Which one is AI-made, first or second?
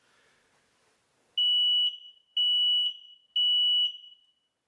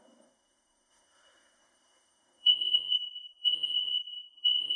second